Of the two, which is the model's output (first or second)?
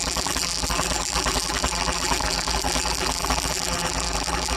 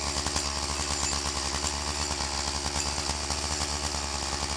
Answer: first